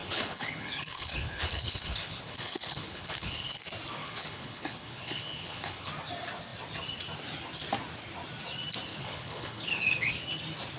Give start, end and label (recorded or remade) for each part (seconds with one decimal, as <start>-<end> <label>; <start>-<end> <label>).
0.0-3.6 remade; 3.6-4.0 recorded; 4.0-5.9 remade; 5.9-8.9 recorded; 8.9-10.1 remade; 10.1-10.8 recorded